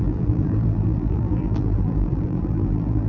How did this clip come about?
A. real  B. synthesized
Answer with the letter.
B